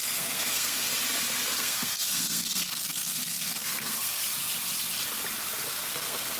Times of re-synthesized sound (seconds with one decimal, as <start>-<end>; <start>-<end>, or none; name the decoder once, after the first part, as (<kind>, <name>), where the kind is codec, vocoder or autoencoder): 0.0-0.9 (codec, SNAC); 1.6-4.2; 5.9-6.4